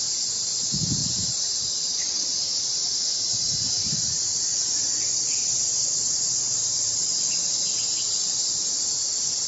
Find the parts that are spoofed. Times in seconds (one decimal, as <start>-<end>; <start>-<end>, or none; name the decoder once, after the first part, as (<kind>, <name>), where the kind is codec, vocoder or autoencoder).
1.0-3.5 (vocoder, BigVGAN v2); 5.7-8.6